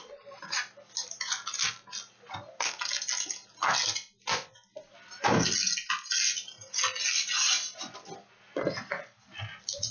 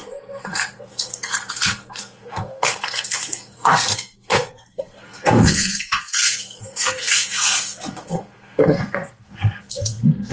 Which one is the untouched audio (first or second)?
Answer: first